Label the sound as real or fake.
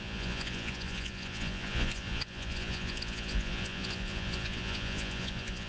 fake